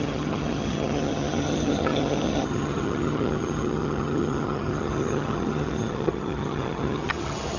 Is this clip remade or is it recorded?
remade